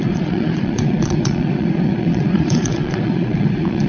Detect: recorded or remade remade